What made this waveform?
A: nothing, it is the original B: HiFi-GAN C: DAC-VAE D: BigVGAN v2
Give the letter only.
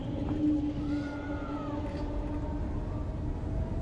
A